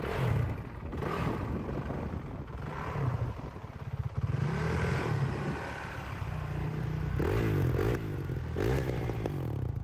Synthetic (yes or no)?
no